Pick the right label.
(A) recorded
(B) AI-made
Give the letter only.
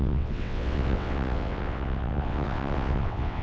B